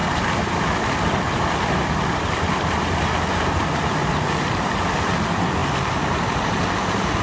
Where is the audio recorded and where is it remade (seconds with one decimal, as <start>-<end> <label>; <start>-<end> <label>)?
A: 0.0-4.3 remade; 4.3-5.6 recorded; 5.6-6.5 remade; 6.5-7.2 recorded